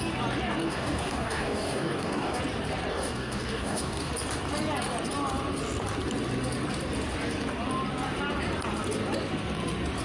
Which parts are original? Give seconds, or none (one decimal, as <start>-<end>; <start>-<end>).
0.0-0.6; 2.4-2.9; 4.1-10.0